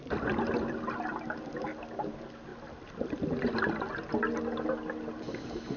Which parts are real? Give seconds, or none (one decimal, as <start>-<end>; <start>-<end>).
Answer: 0.0-5.8